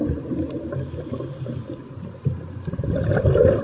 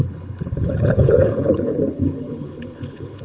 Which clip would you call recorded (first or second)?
first